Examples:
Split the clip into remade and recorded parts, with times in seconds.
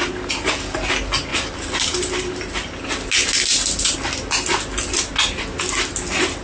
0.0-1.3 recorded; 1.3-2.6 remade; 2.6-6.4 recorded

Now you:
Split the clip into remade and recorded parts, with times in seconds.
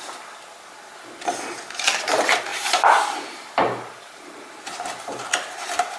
0.0-2.5 recorded; 2.5-4.6 remade; 4.6-6.0 recorded